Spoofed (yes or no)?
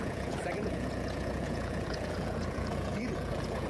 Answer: yes